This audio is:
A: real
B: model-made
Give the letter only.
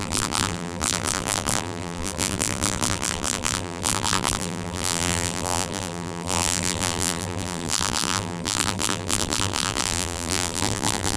B